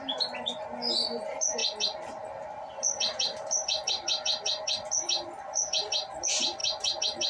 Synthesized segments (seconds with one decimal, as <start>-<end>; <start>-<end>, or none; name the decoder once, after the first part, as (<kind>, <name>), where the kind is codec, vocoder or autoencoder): 0.0-1.6 (vocoder, BigVGAN v2); 2.6-6.6